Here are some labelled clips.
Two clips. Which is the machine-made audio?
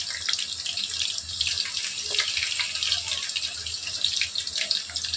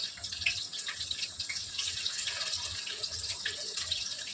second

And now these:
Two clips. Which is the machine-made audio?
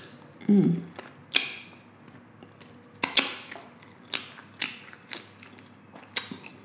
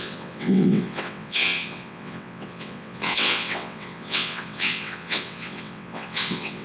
second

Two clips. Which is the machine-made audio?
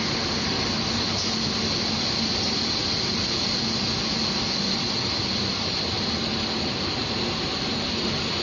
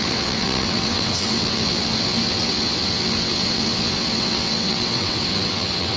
second